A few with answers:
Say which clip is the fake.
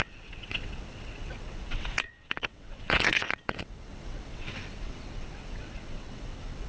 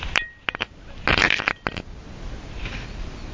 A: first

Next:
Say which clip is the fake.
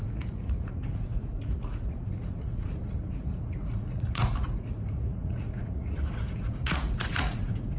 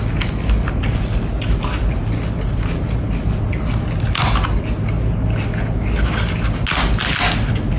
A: first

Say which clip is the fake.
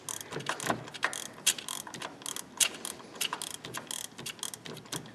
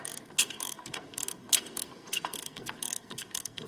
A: second